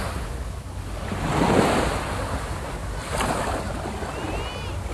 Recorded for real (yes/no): yes